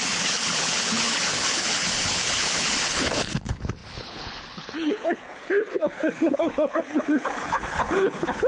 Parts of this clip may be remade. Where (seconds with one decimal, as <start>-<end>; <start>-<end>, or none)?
0.0-8.5